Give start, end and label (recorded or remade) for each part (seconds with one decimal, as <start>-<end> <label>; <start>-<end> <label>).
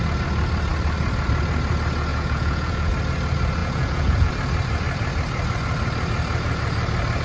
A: 0.0-2.1 recorded; 2.1-2.9 remade; 2.9-3.6 recorded; 3.6-4.3 remade; 4.3-7.2 recorded